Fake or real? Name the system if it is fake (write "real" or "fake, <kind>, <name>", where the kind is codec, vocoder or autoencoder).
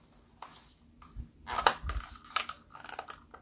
real